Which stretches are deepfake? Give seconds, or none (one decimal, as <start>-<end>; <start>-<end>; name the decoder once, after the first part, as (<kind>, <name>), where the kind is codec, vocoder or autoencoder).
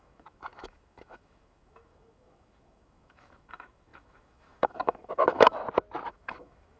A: 0.0-5.6 (autoencoder, DAC-VAE); 6.1-6.8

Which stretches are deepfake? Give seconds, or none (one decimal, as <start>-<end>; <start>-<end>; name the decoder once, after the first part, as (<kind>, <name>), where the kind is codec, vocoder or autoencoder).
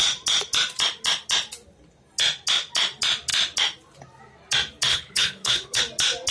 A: 4.9-5.8 (codec, HILCodec)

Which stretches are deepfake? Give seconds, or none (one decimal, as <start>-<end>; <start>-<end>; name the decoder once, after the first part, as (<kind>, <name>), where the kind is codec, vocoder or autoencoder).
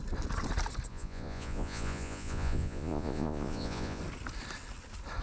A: 0.9-4.0 (vocoder, Vocos)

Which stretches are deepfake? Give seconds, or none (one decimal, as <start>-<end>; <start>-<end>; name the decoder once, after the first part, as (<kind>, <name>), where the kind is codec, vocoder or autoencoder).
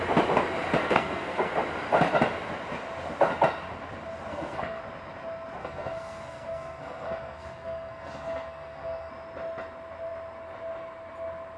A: 0.8-1.5 (codec, SNAC); 4.3-4.8; 5.6-9.1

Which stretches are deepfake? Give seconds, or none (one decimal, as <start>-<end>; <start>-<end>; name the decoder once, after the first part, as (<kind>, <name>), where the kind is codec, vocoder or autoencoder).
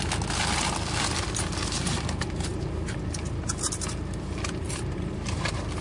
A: 2.5-5.8 (vocoder, BigVGAN v2)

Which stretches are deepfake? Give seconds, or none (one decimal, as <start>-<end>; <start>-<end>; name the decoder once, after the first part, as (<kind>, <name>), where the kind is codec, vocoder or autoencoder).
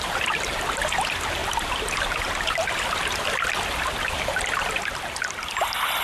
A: none